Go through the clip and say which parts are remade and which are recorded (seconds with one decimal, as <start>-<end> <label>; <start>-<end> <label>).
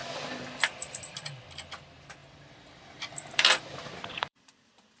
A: 0.0-1.3 remade; 1.3-2.2 recorded; 2.2-5.0 remade